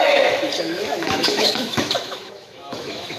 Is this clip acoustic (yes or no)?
no